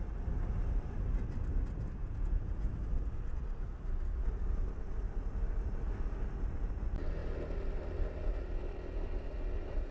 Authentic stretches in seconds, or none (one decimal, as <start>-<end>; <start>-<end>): 0.0-2.0; 2.7-9.9